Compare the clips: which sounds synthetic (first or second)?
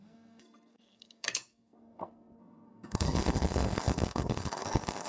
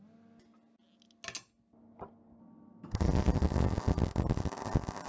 first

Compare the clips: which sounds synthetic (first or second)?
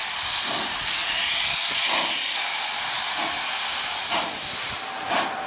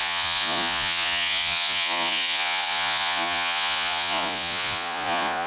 second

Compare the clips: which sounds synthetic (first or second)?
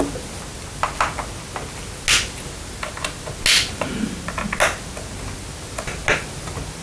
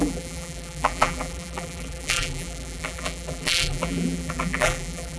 second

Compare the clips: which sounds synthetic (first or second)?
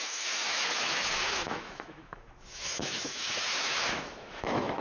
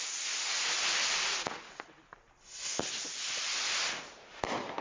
first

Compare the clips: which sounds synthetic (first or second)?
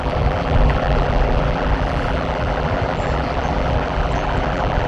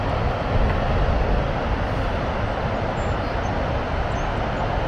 first